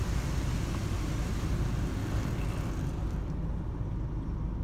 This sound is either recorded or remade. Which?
recorded